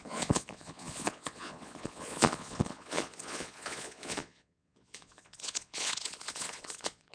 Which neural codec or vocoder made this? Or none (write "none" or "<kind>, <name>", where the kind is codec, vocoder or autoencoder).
vocoder, Vocos